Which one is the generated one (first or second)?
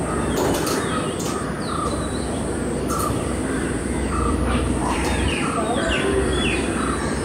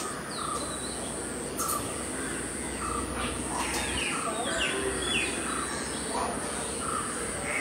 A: first